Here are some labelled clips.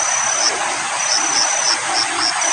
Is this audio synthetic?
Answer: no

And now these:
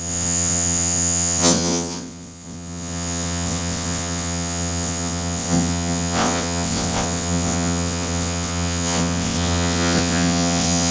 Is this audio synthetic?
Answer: yes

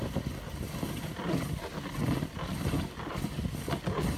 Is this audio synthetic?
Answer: no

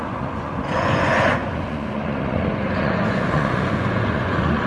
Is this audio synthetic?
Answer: yes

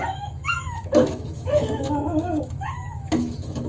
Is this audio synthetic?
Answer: yes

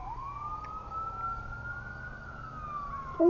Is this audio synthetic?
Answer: no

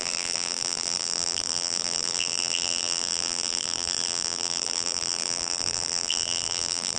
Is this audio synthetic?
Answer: yes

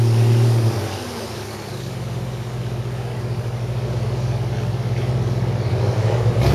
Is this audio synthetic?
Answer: yes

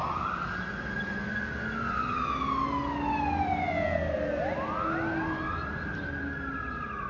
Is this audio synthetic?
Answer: no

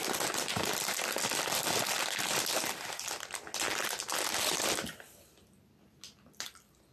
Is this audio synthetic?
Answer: no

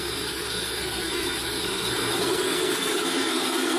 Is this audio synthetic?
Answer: yes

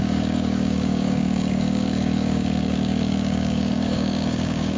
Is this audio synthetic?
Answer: yes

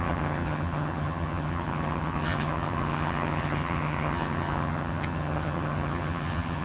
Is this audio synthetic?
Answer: yes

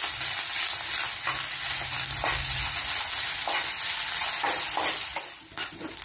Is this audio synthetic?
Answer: no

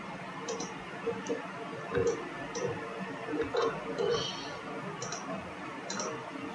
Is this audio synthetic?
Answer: no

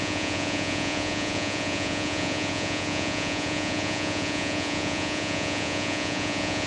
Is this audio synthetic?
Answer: yes